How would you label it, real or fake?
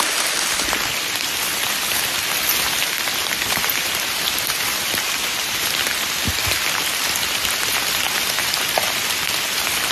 fake